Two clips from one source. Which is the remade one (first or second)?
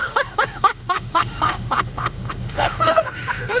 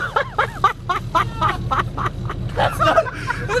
first